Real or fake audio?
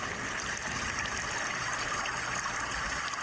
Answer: real